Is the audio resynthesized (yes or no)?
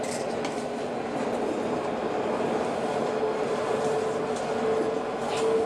no